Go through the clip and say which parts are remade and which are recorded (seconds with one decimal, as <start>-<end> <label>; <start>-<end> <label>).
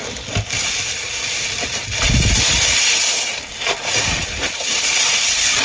0.0-5.6 recorded